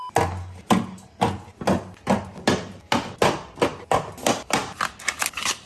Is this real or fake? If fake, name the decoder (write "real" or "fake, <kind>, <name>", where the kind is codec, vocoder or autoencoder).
real